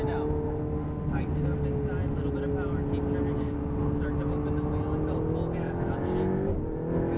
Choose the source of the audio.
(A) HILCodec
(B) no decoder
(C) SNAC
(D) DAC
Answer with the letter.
B